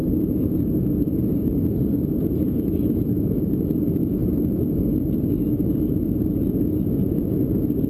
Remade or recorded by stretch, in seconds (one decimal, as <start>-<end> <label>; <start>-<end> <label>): 0.0-3.4 remade; 3.4-7.9 recorded